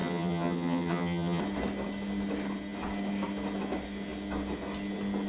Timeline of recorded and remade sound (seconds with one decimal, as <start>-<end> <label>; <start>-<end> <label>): 0.0-1.4 remade; 1.4-5.3 recorded